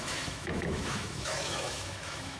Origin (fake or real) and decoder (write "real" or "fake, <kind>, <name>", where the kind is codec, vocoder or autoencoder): fake, autoencoder, DAC-VAE